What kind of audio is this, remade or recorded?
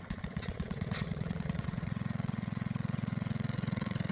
remade